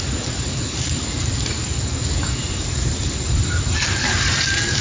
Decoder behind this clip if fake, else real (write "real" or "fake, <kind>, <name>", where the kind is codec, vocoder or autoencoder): fake, vocoder, BigVGAN v2